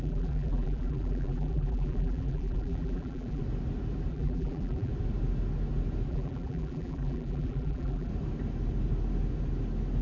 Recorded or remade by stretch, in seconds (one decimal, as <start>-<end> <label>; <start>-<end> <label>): 0.0-3.4 remade; 3.4-4.1 recorded; 4.1-4.9 remade; 4.9-6.1 recorded; 6.1-8.1 remade; 8.1-10.0 recorded